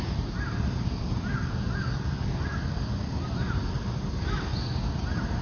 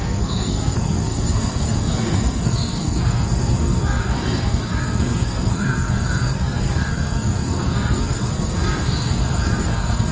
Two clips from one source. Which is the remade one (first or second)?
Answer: second